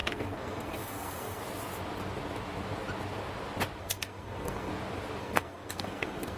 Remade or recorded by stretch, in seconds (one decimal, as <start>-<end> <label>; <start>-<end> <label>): 0.0-1.4 remade; 1.4-3.8 recorded; 3.8-4.7 remade; 4.7-5.2 recorded; 5.2-6.4 remade

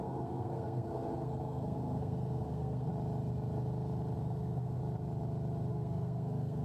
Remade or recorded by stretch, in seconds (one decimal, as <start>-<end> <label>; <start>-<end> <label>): 0.0-2.9 remade; 2.9-4.2 recorded; 4.2-4.8 remade; 4.8-5.7 recorded; 5.7-6.6 remade